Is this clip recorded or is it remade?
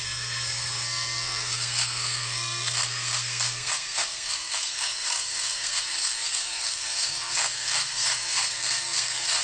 remade